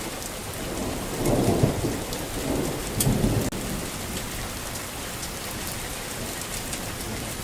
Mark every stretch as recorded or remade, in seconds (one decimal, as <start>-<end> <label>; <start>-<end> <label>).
0.0-0.8 recorded; 0.8-1.7 remade; 1.7-7.4 recorded